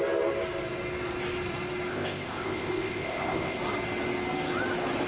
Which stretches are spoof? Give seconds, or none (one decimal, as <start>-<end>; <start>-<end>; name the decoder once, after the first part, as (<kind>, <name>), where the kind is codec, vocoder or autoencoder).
1.9-3.6 (codec, ZipCodec)